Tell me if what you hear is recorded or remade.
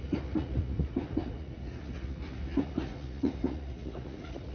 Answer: remade